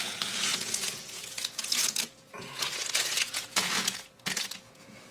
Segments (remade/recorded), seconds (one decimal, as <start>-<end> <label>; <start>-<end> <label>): 0.0-5.1 remade